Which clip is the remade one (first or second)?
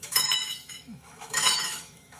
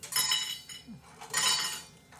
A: first